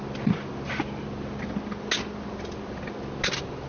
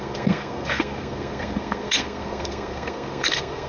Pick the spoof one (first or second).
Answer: second